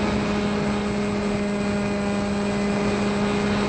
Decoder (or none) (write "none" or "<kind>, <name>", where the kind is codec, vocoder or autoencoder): none